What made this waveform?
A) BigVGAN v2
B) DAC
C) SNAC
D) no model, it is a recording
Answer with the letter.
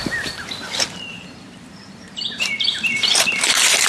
A